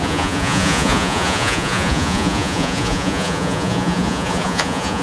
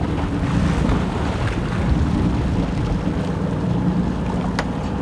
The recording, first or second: second